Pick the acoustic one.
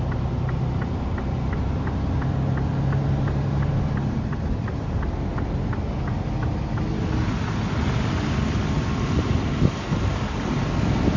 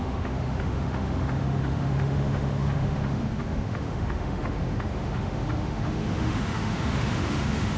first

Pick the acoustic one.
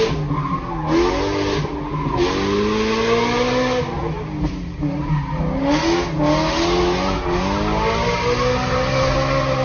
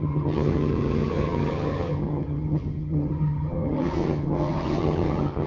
first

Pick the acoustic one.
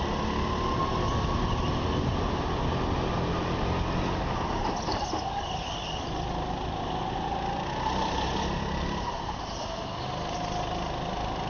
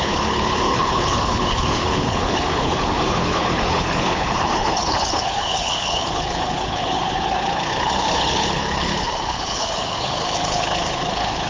first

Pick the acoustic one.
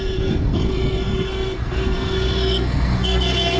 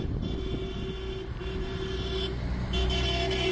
second